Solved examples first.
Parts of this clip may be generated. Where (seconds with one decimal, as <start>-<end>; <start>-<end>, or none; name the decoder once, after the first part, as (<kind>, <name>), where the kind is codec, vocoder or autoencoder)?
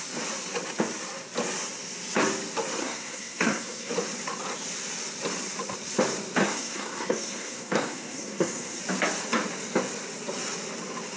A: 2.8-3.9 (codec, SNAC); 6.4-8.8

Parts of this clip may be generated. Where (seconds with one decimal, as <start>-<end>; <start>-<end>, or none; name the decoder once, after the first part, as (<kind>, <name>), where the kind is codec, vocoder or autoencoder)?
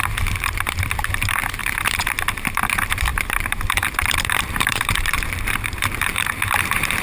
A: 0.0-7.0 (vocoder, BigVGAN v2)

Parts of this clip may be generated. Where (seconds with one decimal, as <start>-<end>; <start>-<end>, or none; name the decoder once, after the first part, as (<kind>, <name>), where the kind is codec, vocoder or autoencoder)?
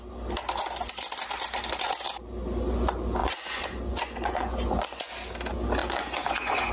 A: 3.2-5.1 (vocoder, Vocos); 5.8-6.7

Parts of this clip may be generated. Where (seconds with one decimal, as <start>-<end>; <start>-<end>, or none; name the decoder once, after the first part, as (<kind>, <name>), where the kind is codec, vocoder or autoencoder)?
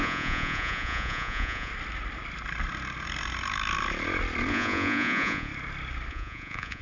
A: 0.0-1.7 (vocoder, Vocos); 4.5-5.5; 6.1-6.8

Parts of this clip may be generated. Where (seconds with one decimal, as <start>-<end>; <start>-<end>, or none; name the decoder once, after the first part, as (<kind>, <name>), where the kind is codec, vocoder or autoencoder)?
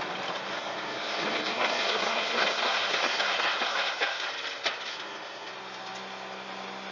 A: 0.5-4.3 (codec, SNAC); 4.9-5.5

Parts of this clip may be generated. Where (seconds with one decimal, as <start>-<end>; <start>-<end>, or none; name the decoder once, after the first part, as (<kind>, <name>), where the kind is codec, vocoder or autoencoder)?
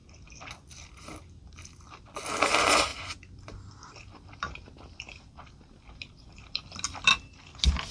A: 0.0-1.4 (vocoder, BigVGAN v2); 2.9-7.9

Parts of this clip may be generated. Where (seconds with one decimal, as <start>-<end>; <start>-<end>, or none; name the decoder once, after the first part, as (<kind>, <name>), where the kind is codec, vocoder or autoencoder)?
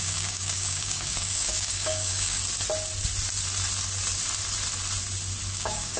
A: 0.0-2.4 (codec, DAC); 5.5-6.0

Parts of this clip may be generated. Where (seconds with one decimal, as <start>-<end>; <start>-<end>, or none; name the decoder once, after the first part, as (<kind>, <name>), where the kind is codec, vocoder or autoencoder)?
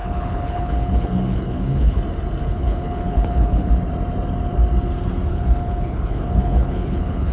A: 0.0-2.0 (codec, HILCodec); 2.4-3.7; 5.3-7.3